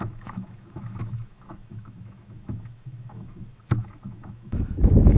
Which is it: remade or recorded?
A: remade